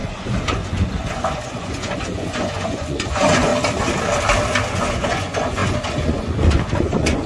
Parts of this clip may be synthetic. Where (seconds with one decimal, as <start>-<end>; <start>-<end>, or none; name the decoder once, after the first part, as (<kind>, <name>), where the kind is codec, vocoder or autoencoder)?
0.0-3.5 (vocoder, Vocos); 4.7-7.3